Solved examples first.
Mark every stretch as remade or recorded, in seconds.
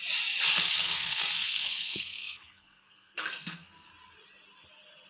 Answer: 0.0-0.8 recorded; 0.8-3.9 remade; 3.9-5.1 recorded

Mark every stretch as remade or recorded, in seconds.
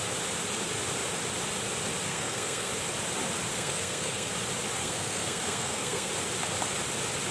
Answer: 0.0-2.1 recorded; 2.1-2.7 remade; 2.7-3.5 recorded; 3.5-4.3 remade; 4.3-4.8 recorded; 4.8-6.1 remade; 6.1-7.3 recorded